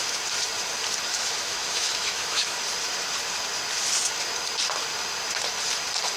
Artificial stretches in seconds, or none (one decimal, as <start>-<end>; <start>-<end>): 1.1-2.6